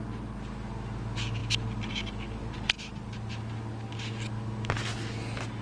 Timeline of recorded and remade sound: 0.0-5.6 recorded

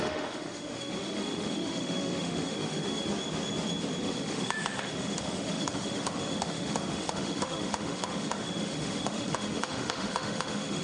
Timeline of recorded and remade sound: 0.0-3.1 remade; 3.1-4.0 recorded; 4.0-10.8 remade

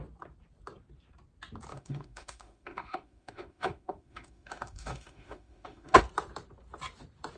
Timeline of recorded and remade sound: 0.0-1.7 recorded; 1.7-6.0 remade; 6.0-7.4 recorded

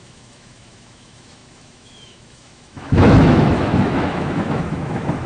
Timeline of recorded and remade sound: 0.0-5.3 remade

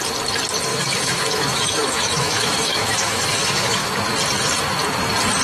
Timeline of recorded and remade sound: 0.0-0.7 recorded; 0.7-3.9 remade; 3.9-5.4 recorded